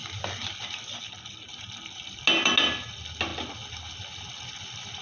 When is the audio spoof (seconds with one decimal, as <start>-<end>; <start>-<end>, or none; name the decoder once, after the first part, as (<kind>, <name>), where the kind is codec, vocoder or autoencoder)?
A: none